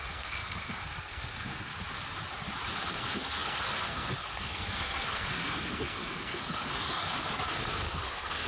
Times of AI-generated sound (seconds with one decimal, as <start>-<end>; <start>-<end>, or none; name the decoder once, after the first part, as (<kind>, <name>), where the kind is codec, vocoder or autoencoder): 0.0-1.7 (codec, SNAC); 2.9-8.5

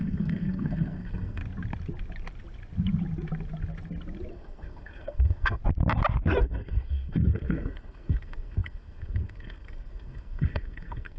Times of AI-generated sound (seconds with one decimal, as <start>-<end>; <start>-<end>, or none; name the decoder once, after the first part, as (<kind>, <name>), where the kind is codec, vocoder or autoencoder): 0.0-1.4 (codec, SNAC); 4.3-5.6; 6.4-11.2

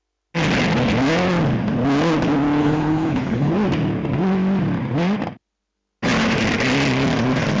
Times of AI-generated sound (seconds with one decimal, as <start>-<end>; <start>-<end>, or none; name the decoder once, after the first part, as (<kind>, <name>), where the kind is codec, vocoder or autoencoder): 2.6-3.5 (codec, HILCodec)

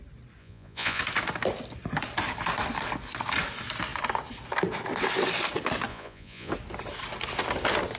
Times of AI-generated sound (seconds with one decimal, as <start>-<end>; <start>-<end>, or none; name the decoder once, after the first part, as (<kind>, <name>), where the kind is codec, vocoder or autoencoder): 0.4-1.0 (vocoder, Vocos); 5.9-6.5

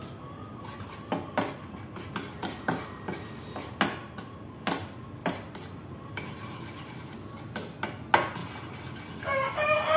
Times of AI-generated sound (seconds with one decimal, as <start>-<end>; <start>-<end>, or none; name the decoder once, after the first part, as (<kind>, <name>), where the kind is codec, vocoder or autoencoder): 2.4-3.3 (vocoder, BigVGAN v2); 5.2-7.0

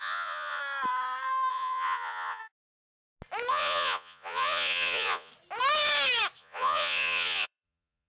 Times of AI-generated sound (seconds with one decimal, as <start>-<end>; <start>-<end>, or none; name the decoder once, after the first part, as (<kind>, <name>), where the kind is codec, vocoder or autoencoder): 0.0-0.6 (vocoder, Vocos); 1.5-2.4; 3.5-5.3; 6.4-8.1

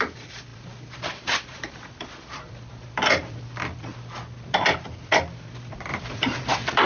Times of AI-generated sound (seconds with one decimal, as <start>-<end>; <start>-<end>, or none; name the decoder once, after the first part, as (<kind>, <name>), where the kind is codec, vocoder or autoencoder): 0.0-3.9 (vocoder, BigVGAN v2); 4.9-6.9

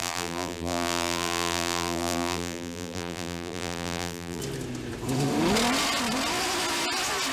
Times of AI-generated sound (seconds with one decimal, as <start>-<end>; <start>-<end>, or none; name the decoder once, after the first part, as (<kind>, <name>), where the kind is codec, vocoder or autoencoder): 0.0-4.4 (vocoder, BigVGAN v2)